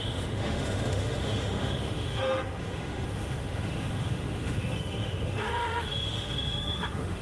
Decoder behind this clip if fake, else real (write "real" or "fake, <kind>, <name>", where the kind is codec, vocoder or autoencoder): fake, autoencoder, DAC-VAE